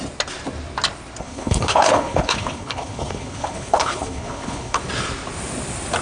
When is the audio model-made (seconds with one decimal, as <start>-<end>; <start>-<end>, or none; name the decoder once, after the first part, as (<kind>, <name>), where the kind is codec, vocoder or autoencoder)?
1.2-4.8 (codec, HILCodec)